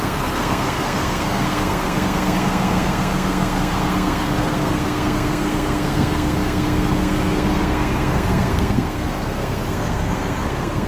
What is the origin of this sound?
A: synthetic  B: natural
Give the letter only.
A